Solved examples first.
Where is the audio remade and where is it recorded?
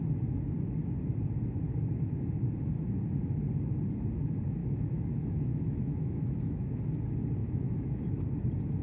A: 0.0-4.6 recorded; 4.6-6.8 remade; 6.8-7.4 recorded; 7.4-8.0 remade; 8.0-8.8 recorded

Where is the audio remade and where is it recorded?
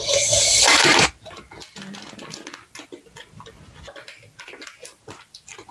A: 0.0-5.7 recorded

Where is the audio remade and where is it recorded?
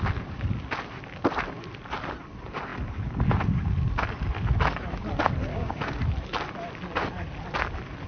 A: 0.0-5.5 recorded; 5.5-6.0 remade; 6.0-8.1 recorded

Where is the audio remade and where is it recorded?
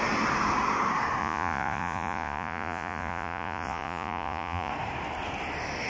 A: 0.0-1.2 recorded; 1.2-4.7 remade; 4.7-5.9 recorded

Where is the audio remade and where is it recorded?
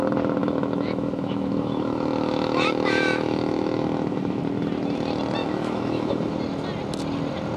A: 0.0-0.4 recorded; 0.4-4.4 remade; 4.4-5.4 recorded; 5.4-6.4 remade; 6.4-7.6 recorded